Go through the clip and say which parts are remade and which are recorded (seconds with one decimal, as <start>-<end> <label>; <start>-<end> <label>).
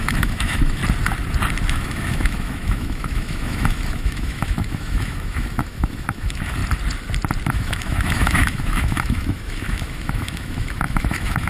0.0-0.8 remade; 0.8-1.7 recorded; 1.7-6.6 remade; 6.6-7.5 recorded; 7.5-11.5 remade